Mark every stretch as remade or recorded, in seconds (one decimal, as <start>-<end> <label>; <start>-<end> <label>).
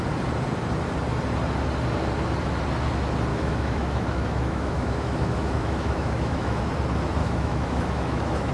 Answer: 0.0-3.3 recorded; 3.3-6.7 remade; 6.7-7.2 recorded; 7.2-8.5 remade